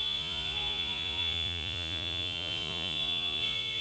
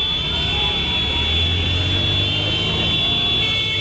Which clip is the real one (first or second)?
second